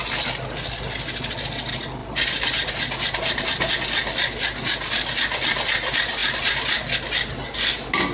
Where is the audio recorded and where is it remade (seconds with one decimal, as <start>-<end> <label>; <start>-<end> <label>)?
0.0-8.1 recorded